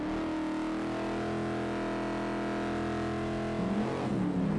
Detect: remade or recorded recorded